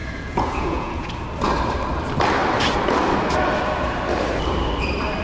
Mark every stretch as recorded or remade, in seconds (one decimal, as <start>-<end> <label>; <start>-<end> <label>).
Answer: 0.0-1.1 remade; 1.1-5.2 recorded